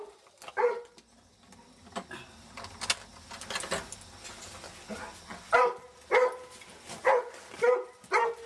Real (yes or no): yes